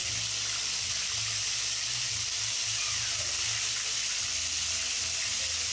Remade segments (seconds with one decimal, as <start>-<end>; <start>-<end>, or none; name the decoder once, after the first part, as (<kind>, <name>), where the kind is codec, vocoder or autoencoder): none